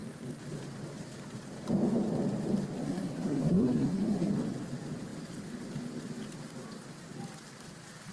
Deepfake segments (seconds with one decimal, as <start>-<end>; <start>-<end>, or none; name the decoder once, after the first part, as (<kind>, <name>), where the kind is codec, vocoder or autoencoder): 2.8-4.3 (codec, SNAC)